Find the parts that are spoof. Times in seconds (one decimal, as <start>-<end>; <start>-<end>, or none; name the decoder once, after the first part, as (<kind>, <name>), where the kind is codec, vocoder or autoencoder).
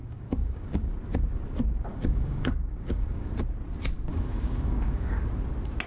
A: 0.0-0.9 (codec, DAC); 1.9-3.3; 4.1-5.2